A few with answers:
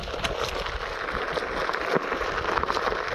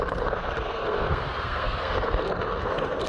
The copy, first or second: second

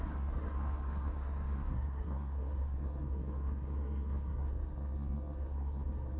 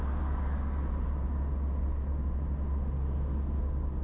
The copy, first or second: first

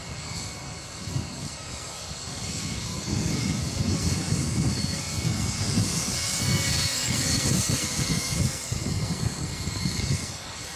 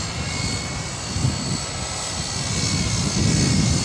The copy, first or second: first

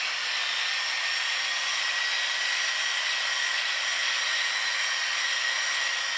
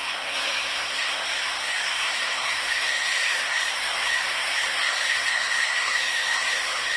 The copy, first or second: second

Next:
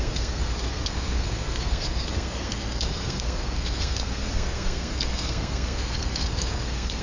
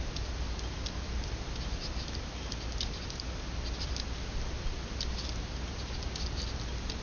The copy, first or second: first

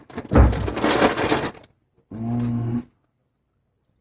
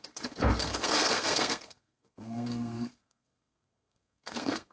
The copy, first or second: second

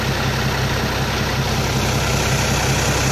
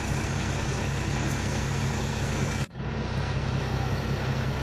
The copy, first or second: second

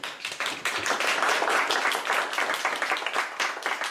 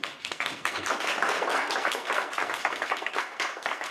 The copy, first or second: second